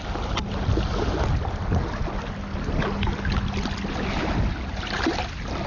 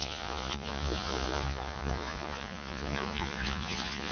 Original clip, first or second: first